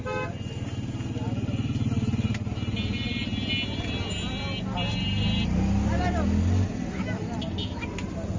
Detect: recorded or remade recorded